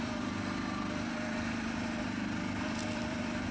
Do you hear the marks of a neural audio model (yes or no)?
yes